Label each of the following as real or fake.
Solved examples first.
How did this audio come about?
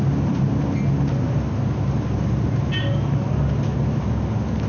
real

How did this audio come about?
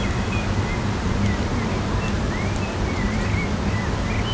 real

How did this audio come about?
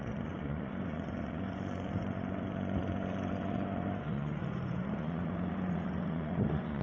fake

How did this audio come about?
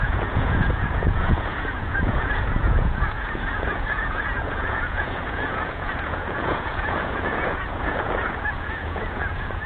fake